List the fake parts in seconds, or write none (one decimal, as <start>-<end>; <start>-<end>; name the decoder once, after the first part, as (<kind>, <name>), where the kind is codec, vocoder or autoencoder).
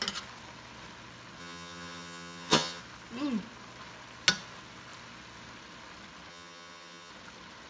1.4-2.8 (vocoder, HiFi-GAN); 6.3-7.1